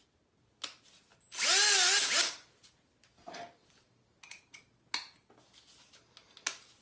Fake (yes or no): no